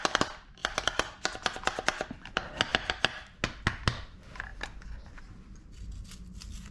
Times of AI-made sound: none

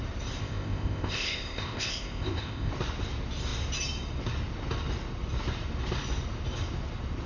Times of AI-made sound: 0.4-2.7 (codec, ZipCodec)